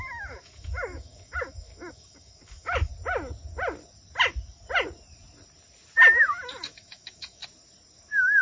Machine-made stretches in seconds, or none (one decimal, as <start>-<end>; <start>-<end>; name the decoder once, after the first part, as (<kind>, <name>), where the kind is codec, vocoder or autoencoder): 0.0-2.9 (autoencoder, DAC-VAE); 6.4-7.4